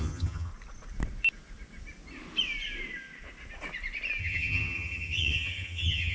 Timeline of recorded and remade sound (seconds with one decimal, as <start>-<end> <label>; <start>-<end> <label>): 0.0-0.5 remade; 0.5-4.2 recorded; 4.2-6.1 remade